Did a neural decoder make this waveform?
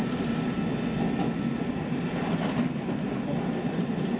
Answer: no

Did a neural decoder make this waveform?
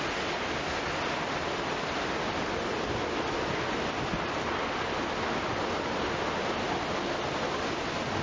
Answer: no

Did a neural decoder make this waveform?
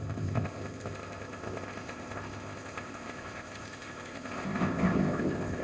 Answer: yes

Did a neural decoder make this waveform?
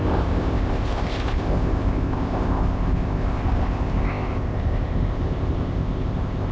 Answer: yes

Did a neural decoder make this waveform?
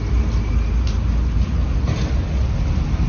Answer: no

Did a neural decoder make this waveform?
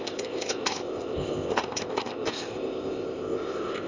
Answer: yes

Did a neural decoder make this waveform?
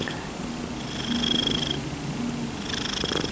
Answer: no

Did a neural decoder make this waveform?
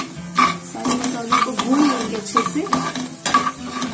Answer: no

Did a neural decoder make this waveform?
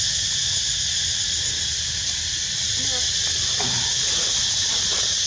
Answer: no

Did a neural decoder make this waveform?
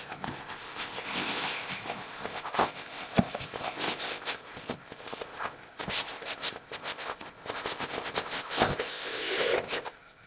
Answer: yes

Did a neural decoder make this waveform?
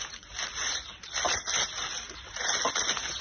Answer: no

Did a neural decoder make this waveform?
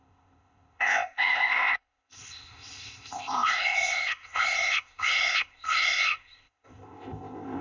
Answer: yes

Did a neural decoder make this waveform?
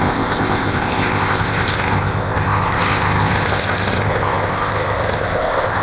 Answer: yes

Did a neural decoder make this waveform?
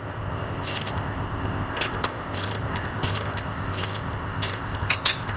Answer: yes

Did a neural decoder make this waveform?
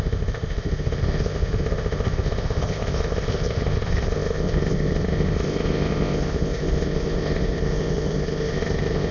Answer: yes